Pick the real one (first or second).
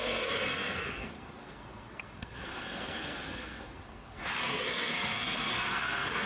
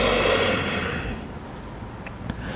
second